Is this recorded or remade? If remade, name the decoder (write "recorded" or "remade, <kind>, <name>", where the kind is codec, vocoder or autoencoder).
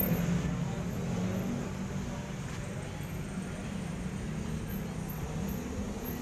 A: recorded